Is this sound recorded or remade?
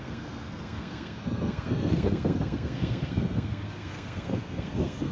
remade